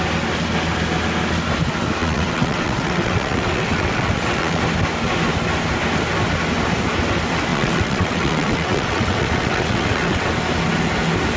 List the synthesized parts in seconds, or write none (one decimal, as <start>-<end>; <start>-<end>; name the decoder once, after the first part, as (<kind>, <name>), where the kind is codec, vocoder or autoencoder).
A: 2.0-4.6 (vocoder, WaveNeXt); 7.5-10.3